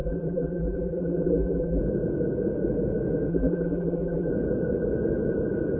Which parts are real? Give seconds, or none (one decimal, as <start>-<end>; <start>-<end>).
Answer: 1.8-3.3; 4.3-5.8